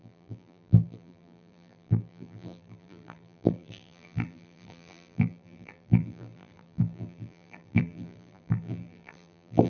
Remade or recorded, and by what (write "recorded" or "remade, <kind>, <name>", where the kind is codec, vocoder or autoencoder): remade, vocoder, BigVGAN v2